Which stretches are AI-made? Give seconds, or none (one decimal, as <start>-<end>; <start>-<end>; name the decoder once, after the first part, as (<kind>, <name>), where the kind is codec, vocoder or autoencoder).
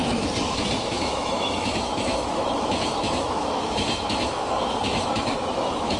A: 0.8-6.0 (autoencoder, DAC-VAE)